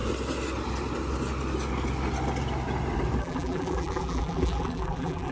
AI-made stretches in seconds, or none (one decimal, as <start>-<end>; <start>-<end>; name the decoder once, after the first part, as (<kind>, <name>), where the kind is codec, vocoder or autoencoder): 3.2-5.3 (vocoder, BigVGAN v2)